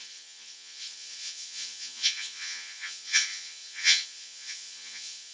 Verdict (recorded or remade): remade